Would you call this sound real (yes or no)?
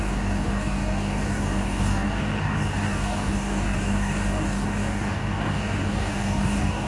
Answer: no